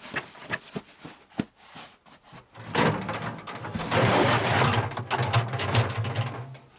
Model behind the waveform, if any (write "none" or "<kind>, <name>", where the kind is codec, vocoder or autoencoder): none